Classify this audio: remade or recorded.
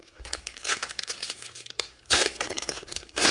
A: remade